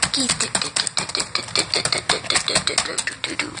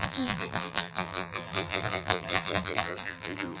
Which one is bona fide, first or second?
first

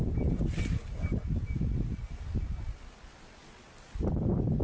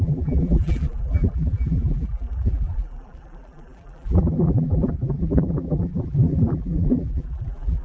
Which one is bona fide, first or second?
first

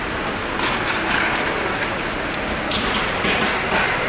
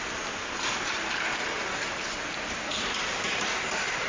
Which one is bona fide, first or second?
first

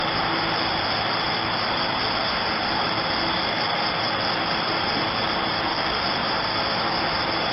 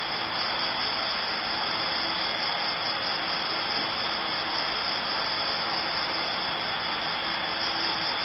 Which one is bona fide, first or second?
second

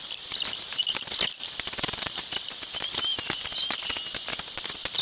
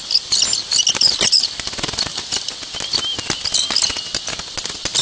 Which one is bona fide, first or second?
second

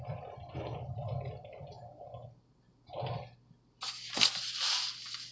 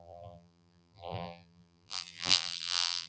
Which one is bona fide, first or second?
first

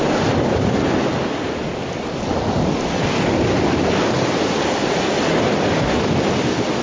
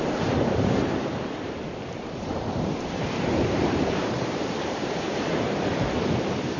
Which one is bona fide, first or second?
first